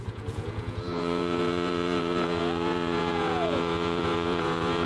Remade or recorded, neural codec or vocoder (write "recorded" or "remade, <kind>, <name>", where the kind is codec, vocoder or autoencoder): remade, vocoder, Vocos